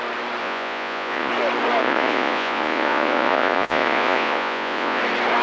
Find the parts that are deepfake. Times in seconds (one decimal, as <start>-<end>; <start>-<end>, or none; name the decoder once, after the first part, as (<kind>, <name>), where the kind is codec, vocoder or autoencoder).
0.4-1.3 (vocoder, Vocos); 1.8-5.0

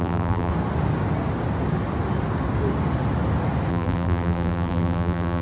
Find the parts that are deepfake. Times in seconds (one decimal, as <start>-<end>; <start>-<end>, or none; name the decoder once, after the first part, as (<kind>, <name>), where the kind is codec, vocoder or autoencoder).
0.0-0.5 (vocoder, BigVGAN v2); 3.7-5.4

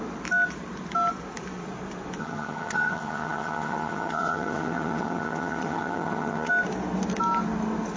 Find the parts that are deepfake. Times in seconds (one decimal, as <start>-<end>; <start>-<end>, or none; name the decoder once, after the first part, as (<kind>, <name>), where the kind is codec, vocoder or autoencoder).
2.2-6.5 (vocoder, HiFi-GAN)

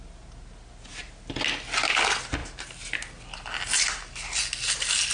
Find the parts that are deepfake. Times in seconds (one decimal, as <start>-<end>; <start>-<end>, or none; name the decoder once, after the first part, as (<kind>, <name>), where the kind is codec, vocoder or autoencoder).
none